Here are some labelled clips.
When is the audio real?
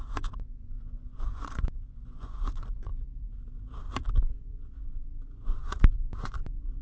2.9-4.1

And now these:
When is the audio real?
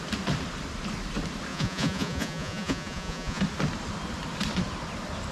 0.0-1.5; 3.4-5.3